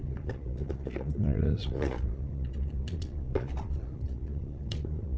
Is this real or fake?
fake